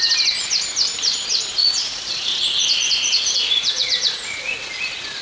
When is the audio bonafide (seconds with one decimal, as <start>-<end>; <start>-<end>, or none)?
0.0-1.6; 4.7-5.2

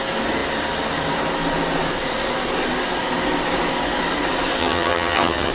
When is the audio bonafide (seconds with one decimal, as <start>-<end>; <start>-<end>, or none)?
0.0-4.6

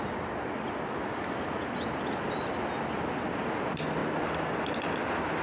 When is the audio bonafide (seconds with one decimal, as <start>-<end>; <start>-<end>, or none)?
0.0-5.4

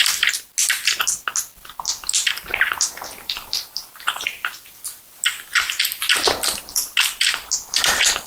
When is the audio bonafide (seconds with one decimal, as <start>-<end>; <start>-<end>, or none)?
0.0-2.5; 4.2-8.3

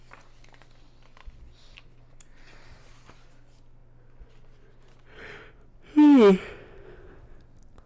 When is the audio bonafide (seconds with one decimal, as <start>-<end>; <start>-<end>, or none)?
0.0-7.9